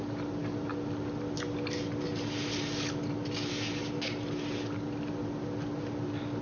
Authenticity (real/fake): real